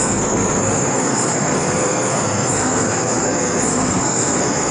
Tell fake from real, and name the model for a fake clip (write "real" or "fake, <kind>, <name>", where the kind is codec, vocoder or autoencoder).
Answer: fake, codec, SNAC